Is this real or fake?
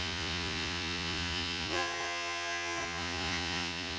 fake